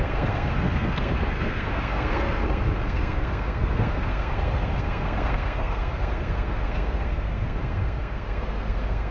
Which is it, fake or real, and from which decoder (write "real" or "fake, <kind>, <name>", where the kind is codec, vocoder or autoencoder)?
fake, codec, SNAC